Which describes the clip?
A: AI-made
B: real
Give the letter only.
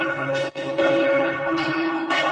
A